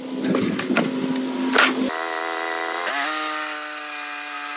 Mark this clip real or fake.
real